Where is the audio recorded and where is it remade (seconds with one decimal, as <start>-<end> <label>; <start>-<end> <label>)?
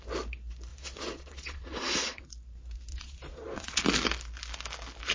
0.0-0.7 recorded; 0.7-2.2 remade; 2.2-2.9 recorded; 2.9-3.8 remade; 3.8-5.1 recorded